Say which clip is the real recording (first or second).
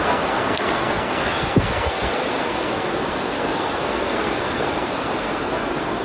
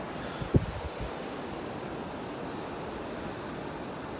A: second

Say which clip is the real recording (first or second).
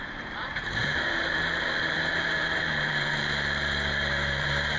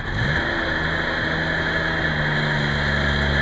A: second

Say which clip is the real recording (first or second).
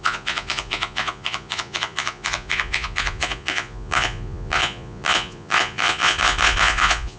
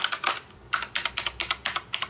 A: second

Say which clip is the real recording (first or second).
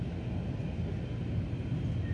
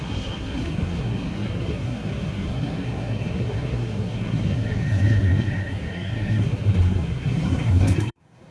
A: first